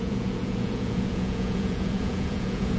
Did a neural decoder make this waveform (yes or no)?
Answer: yes